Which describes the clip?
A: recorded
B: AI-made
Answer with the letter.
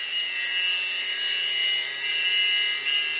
A